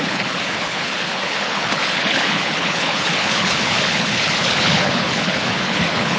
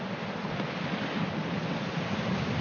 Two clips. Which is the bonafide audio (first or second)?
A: second